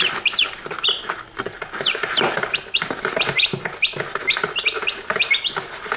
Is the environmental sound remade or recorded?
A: recorded